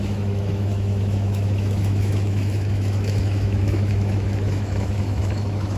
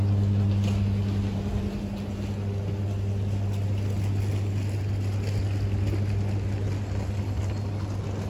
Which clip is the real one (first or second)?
second